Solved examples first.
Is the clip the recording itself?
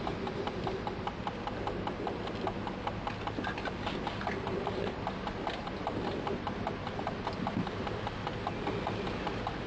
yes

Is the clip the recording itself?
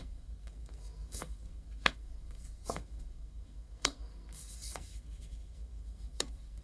no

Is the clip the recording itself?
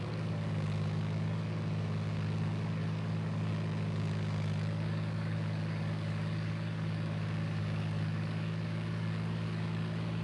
no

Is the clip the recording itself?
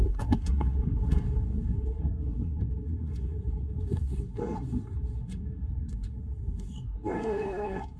no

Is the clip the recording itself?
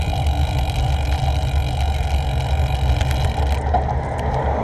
yes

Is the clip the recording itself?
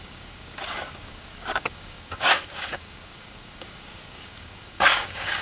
no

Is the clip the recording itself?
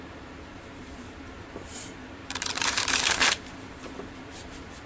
no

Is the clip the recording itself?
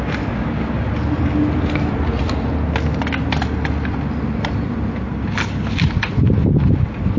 yes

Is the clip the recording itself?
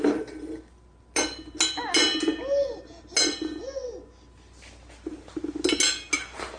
yes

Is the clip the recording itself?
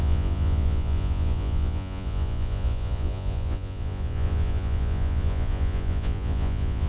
no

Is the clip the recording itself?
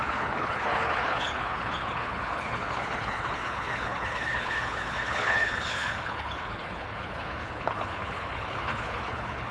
no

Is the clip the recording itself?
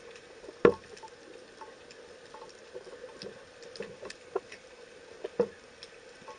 yes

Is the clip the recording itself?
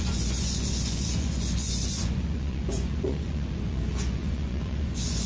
no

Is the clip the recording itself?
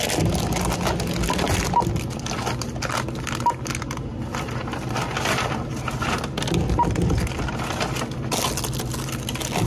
yes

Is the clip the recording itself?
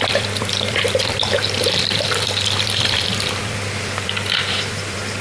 no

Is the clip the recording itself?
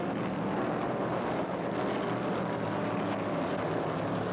yes